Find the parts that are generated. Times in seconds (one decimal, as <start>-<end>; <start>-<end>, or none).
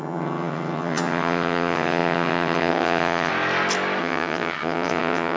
0.0-3.3; 4.0-5.4